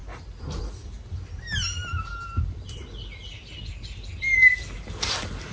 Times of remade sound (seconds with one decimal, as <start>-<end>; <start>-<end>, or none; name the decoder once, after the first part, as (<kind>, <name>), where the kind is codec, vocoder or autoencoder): none